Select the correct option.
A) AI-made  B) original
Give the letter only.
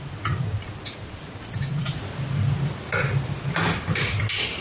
B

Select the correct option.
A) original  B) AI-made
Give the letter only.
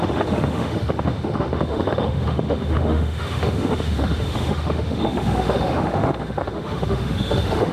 B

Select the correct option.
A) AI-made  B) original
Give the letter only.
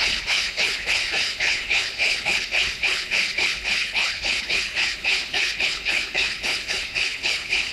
A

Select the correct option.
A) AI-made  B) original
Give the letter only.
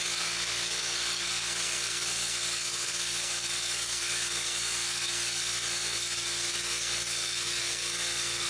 A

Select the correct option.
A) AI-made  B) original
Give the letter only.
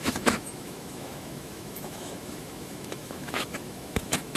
A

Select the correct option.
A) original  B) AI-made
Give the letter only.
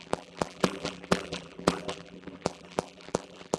B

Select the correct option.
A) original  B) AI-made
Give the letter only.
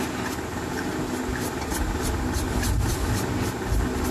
A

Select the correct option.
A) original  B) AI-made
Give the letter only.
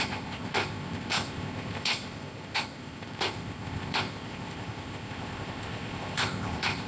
B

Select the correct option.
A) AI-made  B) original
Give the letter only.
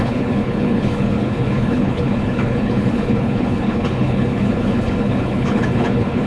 A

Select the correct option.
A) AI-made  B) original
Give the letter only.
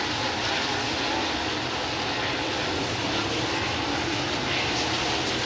B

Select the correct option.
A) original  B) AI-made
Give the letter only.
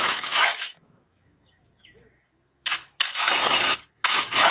B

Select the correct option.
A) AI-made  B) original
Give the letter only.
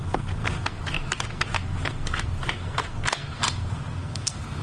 A